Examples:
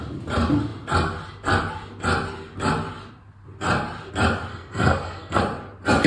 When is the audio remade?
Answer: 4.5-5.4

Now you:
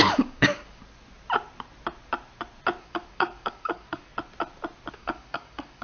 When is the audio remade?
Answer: 0.0-0.8; 2.8-4.1; 4.9-5.8

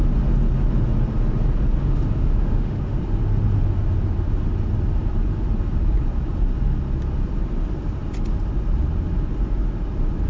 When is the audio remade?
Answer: 1.8-3.0

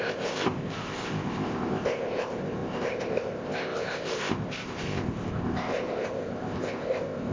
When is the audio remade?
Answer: 0.0-7.3

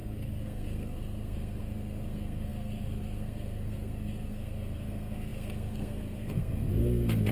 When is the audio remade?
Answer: 0.0-7.3

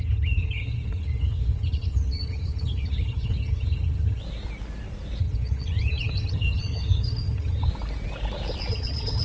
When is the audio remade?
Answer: 0.0-4.2; 5.2-7.7; 8.7-9.2

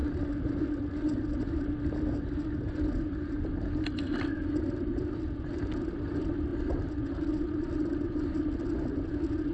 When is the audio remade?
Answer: none